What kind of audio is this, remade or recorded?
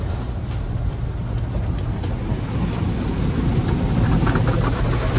recorded